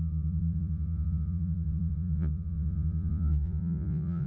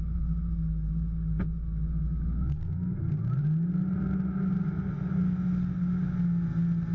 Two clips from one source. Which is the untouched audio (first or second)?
second